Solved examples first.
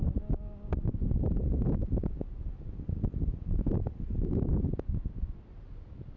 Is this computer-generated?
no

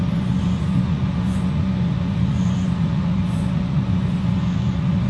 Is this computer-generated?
yes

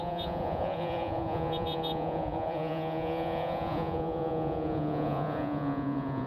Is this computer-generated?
yes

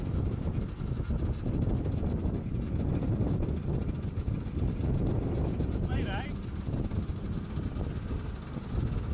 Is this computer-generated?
no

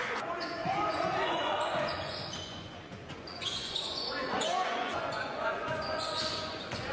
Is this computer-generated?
yes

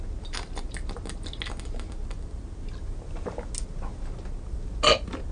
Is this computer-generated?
no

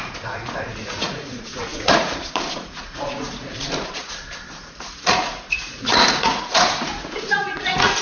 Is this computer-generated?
yes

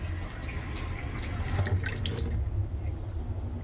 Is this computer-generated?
no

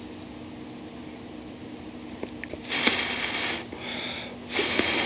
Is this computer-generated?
no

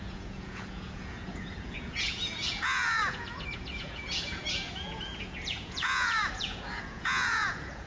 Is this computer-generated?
yes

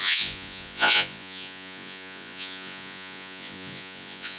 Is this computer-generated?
yes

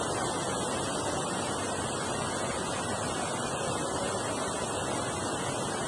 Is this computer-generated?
no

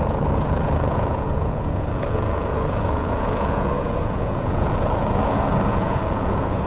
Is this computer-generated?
yes